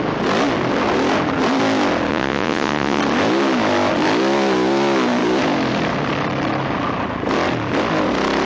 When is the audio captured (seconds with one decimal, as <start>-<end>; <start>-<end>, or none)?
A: 0.0-2.1; 3.0-8.5